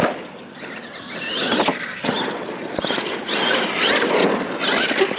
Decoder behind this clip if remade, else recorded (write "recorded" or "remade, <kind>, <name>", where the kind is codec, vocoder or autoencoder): recorded